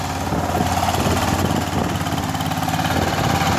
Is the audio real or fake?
real